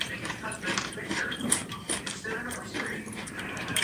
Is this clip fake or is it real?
fake